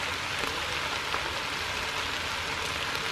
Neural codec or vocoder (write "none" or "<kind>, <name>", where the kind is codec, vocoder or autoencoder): none